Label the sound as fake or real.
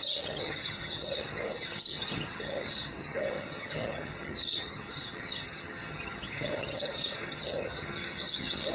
fake